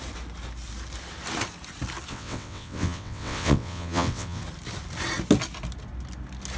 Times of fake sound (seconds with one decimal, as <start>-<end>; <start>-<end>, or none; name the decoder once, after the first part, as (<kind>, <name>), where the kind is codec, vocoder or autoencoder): 2.1-4.4 (vocoder, WaveNeXt)